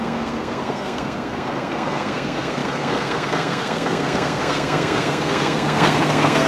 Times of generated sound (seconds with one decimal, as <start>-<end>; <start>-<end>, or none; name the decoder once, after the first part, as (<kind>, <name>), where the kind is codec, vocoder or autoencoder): 0.0-6.5 (codec, SNAC)